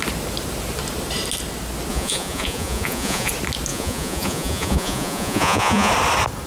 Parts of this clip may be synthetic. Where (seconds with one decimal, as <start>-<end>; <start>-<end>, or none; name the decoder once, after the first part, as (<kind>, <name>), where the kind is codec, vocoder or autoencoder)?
1.9-3.3 (vocoder, Vocos); 3.7-5.9